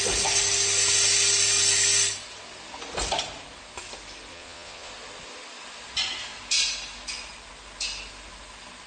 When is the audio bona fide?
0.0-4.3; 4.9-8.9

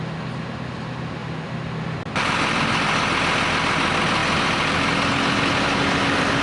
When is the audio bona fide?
0.0-6.4

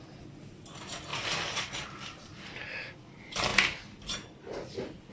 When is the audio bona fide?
0.0-5.1

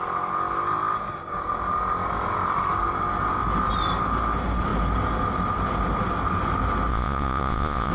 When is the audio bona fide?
0.0-6.9

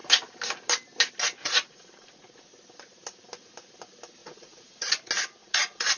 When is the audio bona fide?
0.0-1.4; 2.5-4.2; 4.9-5.4

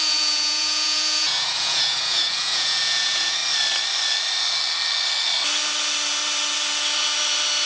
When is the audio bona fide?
3.4-7.7

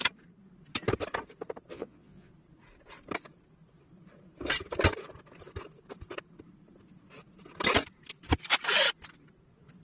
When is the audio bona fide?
0.0-1.7; 2.3-9.8

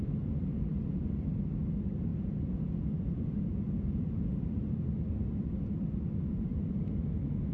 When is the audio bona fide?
0.0-2.1; 4.2-7.5